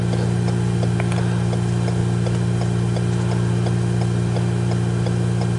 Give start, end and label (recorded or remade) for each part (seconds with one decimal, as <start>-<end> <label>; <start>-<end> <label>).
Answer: 0.0-5.6 recorded